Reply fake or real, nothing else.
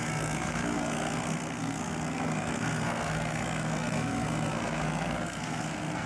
fake